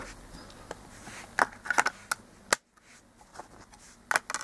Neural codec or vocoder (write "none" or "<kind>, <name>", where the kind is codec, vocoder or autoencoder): none